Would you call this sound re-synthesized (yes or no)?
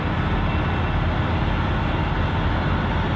no